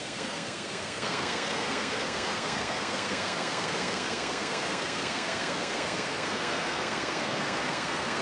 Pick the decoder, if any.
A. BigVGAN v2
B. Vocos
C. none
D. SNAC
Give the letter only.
D